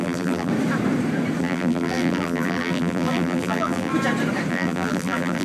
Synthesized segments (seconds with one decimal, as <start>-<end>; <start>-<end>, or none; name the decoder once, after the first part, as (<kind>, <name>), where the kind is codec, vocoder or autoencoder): 0.0-0.5 (vocoder, BigVGAN v2); 1.4-3.9; 4.5-5.4

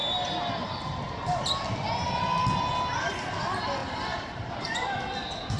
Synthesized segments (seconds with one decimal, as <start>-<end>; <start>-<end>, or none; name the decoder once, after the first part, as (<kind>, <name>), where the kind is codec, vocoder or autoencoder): 3.8-4.5 (vocoder, BigVGAN v2)

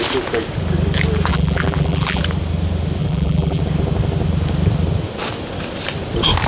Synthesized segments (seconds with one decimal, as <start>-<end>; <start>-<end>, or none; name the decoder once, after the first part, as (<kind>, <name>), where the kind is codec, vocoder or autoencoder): 1.3-2.2 (vocoder, BigVGAN v2); 3.0-3.6

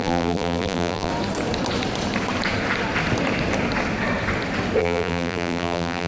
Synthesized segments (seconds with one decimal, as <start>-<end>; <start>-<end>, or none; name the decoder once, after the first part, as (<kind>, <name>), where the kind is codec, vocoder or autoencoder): 0.0-1.1 (vocoder, BigVGAN v2); 4.8-6.1